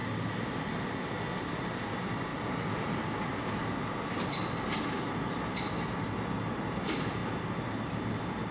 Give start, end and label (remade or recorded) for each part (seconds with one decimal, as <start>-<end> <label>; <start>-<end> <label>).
0.0-2.3 recorded; 2.3-3.0 remade; 3.0-8.5 recorded